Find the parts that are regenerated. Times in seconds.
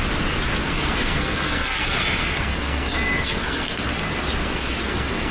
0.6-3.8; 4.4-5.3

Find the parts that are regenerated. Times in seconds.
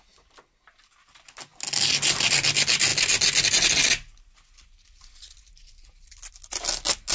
none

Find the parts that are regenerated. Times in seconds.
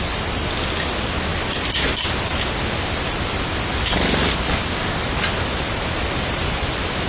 none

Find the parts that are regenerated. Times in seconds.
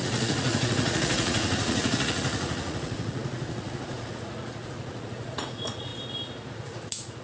0.0-5.9; 6.5-7.2